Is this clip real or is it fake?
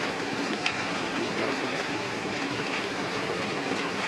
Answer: fake